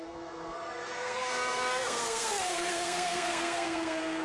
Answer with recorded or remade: remade